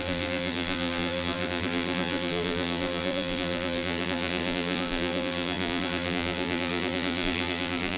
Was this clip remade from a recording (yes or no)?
yes